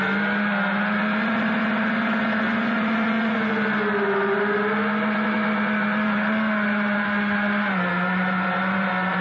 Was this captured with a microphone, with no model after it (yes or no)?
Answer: yes